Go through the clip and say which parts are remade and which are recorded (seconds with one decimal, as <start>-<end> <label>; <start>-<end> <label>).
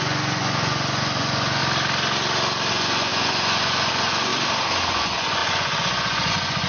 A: 0.0-1.6 remade; 1.6-2.7 recorded; 2.7-4.3 remade; 4.3-4.9 recorded; 4.9-6.7 remade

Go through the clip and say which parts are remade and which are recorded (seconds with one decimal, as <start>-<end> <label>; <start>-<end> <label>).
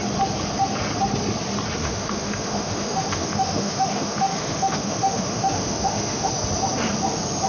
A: 0.0-1.8 recorded; 1.8-6.3 remade; 6.3-7.5 recorded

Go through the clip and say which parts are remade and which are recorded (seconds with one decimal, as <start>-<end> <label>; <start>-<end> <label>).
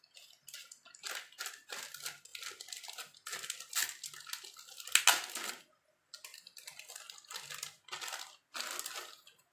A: 0.0-9.5 recorded